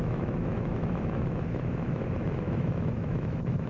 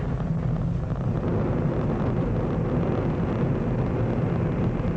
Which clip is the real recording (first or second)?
second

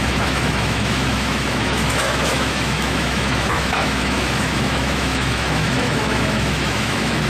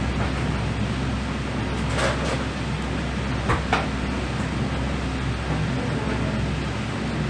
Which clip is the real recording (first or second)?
second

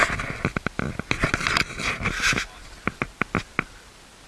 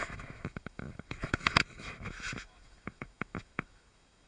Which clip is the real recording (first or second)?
first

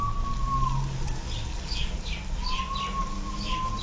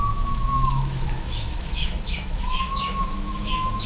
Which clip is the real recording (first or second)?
first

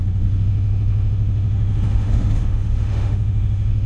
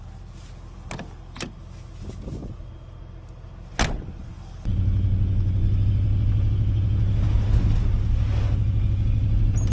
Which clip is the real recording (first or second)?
second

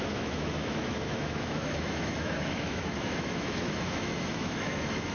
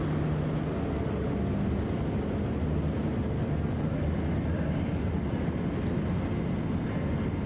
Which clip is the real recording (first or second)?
second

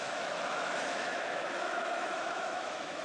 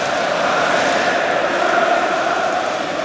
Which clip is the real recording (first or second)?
second